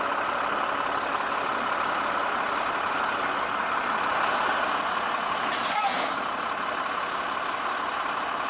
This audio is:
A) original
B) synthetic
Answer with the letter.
A